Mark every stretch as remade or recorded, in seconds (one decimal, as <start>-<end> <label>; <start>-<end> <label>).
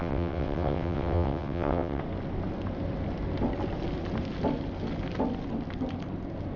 0.0-2.0 remade; 2.0-6.6 recorded